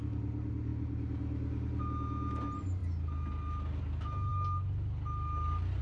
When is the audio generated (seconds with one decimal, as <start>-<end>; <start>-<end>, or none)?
none

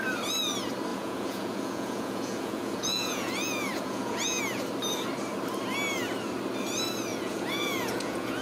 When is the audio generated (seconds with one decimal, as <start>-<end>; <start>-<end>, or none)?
0.9-4.4; 7.1-8.4

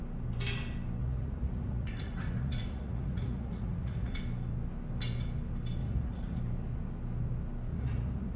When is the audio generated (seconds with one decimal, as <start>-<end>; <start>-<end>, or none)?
1.0-4.2; 5.8-6.4; 7.7-8.4

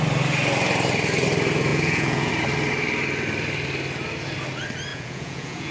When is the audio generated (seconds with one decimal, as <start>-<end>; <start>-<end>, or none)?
1.7-2.3; 4.9-5.7